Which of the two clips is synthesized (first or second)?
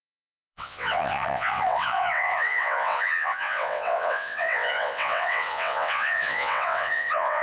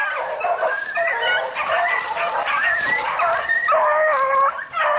first